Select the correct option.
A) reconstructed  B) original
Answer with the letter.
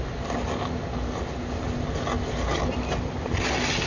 B